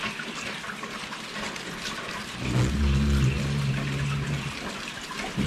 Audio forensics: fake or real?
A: real